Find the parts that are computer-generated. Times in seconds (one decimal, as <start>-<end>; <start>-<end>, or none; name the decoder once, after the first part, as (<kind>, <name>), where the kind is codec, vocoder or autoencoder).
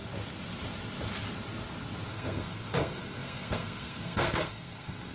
2.1-5.1 (codec, SNAC)